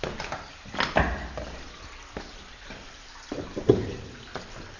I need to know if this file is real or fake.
real